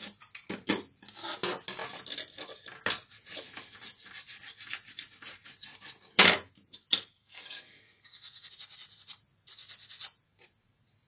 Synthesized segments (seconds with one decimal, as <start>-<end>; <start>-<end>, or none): 7.2-8.5